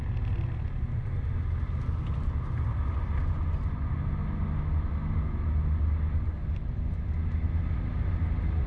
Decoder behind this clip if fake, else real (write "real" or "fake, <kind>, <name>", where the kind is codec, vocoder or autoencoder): real